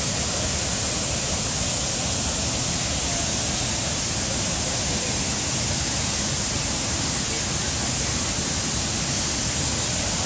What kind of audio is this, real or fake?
real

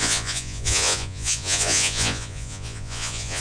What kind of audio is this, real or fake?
fake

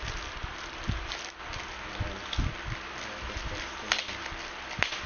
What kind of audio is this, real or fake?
real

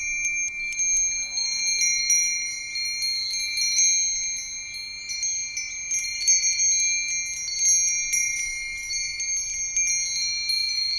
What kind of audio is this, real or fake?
real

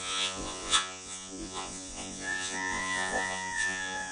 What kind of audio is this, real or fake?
fake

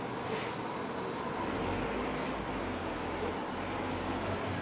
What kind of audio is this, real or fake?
real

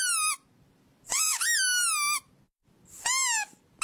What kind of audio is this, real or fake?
real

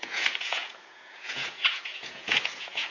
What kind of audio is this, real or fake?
fake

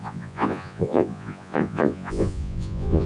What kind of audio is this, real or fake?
fake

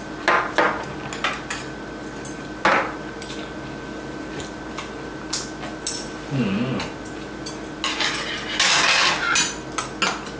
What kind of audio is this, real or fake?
real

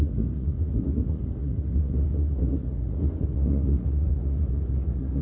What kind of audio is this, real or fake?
fake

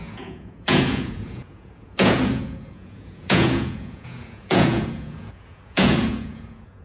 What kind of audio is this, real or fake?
fake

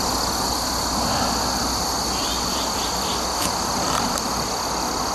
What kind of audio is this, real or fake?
real